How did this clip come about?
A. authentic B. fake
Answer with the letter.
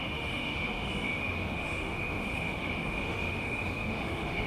B